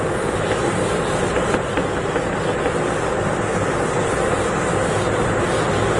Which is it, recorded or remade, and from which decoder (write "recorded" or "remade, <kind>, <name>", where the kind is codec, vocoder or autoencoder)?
recorded